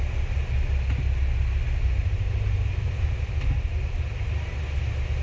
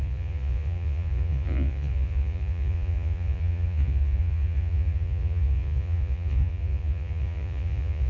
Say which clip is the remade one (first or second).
second